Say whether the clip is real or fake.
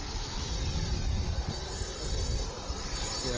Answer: real